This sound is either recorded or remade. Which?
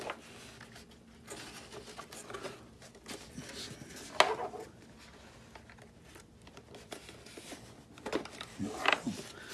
recorded